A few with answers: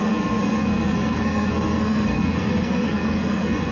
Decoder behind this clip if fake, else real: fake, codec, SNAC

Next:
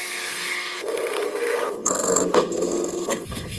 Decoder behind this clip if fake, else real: fake, codec, SNAC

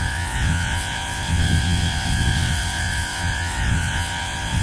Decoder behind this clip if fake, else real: fake, vocoder, WaveNeXt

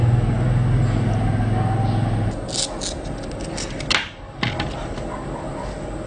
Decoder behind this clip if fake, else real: real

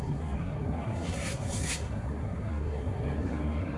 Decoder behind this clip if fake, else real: fake, codec, SNAC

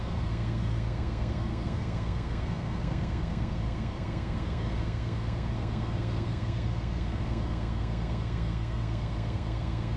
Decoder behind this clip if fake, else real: fake, codec, SNAC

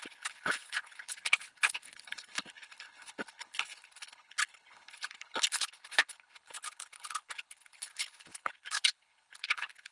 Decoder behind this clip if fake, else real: fake, codec, HILCodec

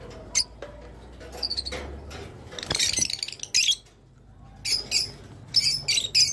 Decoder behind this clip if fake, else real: real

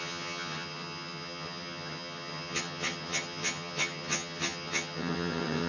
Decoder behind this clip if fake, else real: fake, vocoder, HiFi-GAN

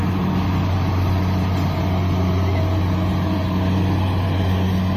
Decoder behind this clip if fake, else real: real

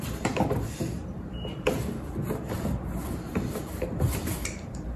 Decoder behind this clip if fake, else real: fake, vocoder, BigVGAN v2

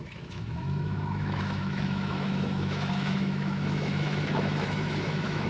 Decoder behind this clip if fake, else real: fake, autoencoder, DAC-VAE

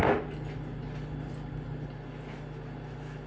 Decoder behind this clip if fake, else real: real